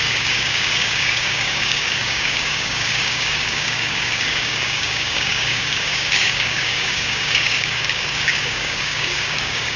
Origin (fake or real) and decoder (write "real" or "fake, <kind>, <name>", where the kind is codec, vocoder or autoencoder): fake, codec, DAC